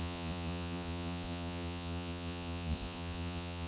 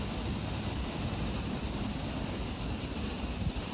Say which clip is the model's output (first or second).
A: first